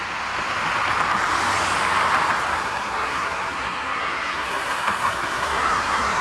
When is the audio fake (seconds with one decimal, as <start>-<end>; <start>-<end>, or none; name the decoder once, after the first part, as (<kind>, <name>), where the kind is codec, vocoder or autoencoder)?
2.5-6.2 (codec, SNAC)